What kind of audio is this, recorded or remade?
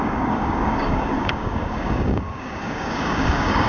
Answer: remade